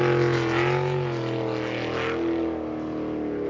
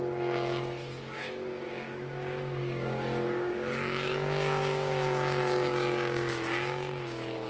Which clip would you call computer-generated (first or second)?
second